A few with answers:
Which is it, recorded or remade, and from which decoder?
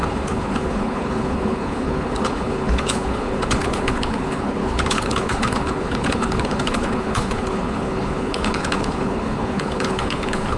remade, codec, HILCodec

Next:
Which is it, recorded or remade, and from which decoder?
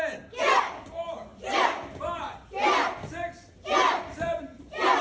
recorded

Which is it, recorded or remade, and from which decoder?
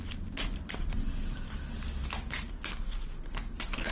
recorded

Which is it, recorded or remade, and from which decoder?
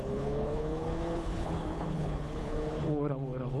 remade, codec, HILCodec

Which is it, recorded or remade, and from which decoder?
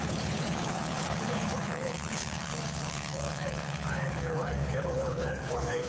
remade, codec, HILCodec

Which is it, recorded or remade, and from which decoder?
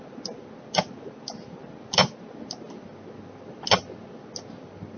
recorded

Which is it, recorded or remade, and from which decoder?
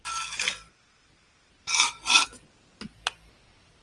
recorded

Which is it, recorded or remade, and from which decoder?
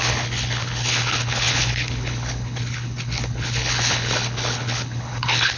remade, codec, HILCodec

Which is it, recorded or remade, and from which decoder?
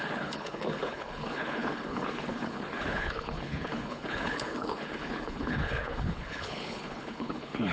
remade, codec, HILCodec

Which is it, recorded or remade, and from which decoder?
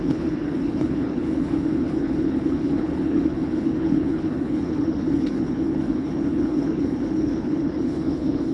remade, codec, HILCodec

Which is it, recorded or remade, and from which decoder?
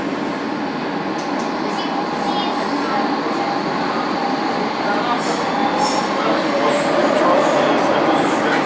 recorded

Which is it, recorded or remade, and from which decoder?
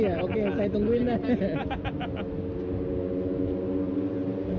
recorded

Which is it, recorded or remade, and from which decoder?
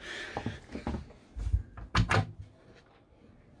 recorded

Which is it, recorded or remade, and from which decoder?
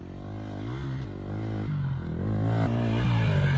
recorded